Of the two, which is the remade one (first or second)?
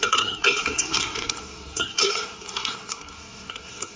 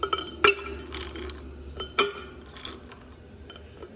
first